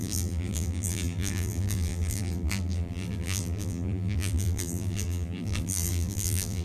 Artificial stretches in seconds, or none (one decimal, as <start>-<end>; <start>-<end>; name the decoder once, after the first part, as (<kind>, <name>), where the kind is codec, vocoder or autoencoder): 0.0-6.6 (vocoder, BigVGAN v2)